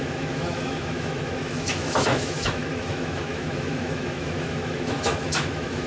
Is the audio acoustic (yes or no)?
no